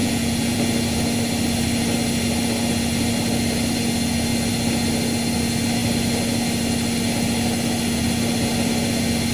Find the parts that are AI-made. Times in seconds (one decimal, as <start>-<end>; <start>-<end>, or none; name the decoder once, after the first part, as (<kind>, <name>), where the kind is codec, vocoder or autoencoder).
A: 0.0-0.6 (vocoder, Vocos)